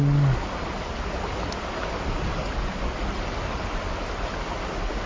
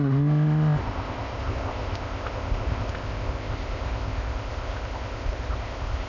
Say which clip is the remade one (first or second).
second